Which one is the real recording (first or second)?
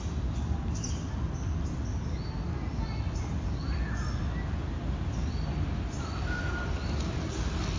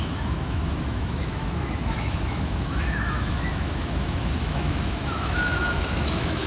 first